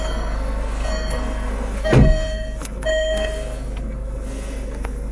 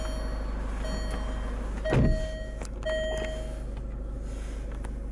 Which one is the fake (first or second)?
first